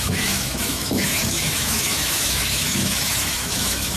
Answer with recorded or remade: remade